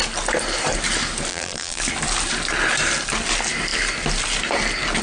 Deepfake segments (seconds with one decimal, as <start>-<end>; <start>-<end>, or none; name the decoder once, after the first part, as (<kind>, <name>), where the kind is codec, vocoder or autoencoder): 1.3-1.8 (vocoder, BigVGAN v2)